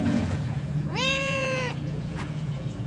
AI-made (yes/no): yes